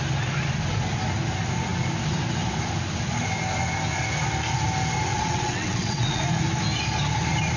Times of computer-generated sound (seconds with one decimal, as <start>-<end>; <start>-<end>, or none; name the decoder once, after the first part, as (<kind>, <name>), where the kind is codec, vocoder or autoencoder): 5.1-6.2 (vocoder, WaveNeXt)